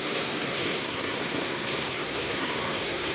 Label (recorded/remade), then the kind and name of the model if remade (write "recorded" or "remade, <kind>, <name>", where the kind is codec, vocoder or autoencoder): remade, codec, SNAC